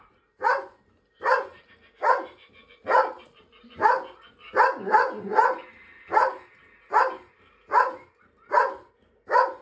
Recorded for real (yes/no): yes